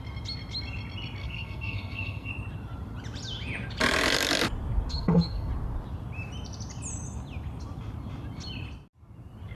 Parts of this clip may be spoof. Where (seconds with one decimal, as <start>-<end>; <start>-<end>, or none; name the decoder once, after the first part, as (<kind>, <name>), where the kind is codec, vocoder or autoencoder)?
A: 1.2-2.3 (codec, SNAC); 4.9-5.5